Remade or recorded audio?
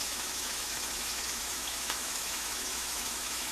remade